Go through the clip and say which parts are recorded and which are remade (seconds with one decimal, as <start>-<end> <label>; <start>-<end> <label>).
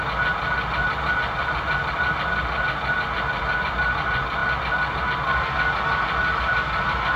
0.0-7.2 recorded